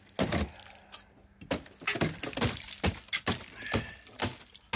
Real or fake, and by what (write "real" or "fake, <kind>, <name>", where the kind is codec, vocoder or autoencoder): real